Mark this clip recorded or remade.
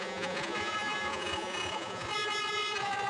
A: remade